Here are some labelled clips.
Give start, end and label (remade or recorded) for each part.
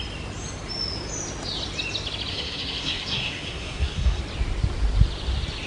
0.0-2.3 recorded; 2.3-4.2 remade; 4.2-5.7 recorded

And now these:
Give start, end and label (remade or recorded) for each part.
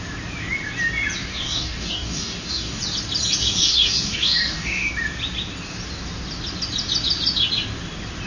0.0-1.3 recorded; 1.3-2.8 remade; 2.8-3.4 recorded; 3.4-4.9 remade; 4.9-8.3 recorded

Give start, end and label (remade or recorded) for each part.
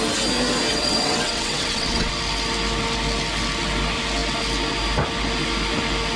0.0-0.7 recorded; 0.7-2.1 remade; 2.1-6.2 recorded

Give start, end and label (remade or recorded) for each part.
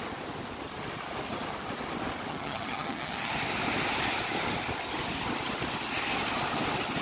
0.0-2.3 recorded; 2.3-3.3 remade; 3.3-7.0 recorded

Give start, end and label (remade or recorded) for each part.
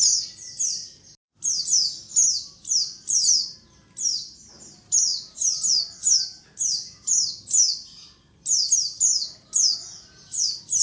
0.0-10.8 recorded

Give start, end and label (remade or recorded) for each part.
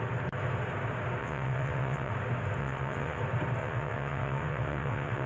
0.0-1.2 recorded; 1.2-2.1 remade; 2.1-2.6 recorded; 2.6-3.2 remade; 3.2-3.6 recorded; 3.6-5.3 remade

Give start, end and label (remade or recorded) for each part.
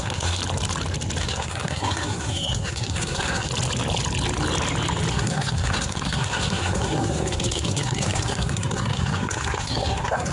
0.0-0.4 remade; 0.4-1.2 recorded; 1.2-3.5 remade; 3.5-5.1 recorded; 5.1-10.3 remade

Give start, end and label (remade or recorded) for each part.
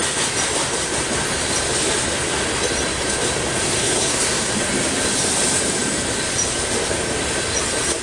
0.0-3.8 recorded; 3.8-4.5 remade; 4.5-8.0 recorded